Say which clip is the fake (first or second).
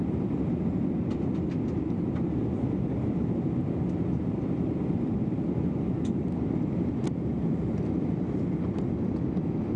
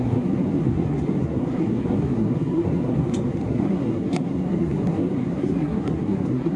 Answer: second